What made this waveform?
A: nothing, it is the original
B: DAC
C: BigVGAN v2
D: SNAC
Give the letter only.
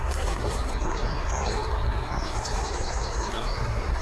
D